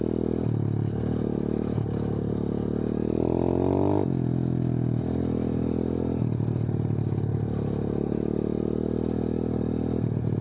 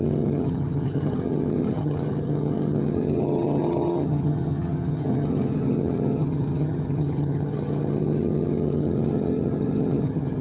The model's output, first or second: second